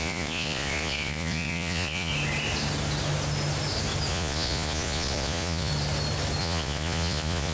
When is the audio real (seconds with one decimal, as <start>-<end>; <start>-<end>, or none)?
2.1-4.1; 5.7-6.4